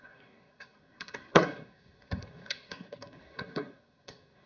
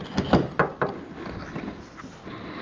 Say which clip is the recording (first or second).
second